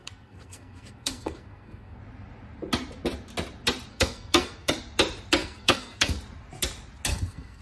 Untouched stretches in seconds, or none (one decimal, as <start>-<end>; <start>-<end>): 2.0-3.9; 4.7-5.4; 6.2-7.1